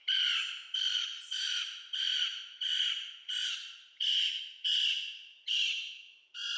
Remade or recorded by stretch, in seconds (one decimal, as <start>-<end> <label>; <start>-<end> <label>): 0.0-0.4 remade; 0.4-1.2 recorded; 1.2-6.6 remade